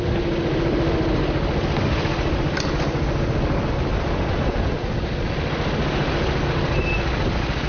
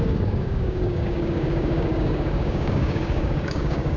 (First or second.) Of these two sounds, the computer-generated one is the second